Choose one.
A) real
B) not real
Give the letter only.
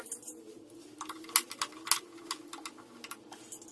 A